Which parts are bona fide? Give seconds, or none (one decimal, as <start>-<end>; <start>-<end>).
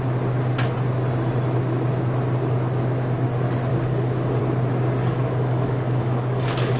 0.0-3.7; 4.4-5.0